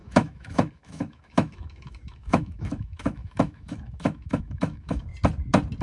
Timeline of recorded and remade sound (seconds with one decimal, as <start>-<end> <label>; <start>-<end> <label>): 0.0-5.1 remade; 5.1-5.8 recorded